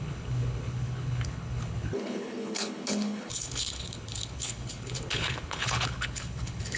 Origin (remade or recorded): remade